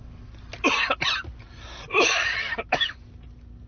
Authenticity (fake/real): real